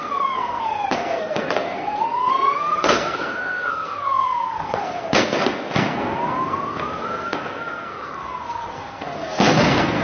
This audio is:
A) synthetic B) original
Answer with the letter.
A